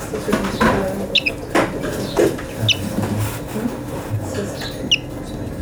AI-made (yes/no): no